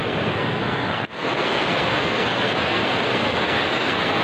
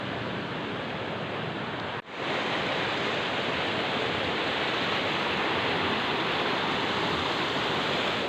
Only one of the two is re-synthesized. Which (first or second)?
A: first